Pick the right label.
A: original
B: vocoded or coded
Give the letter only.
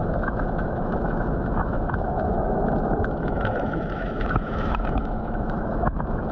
B